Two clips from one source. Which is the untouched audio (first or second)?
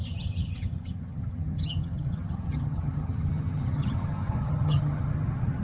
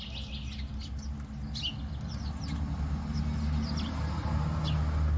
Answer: second